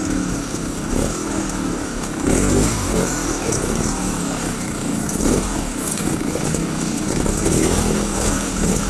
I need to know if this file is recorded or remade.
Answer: remade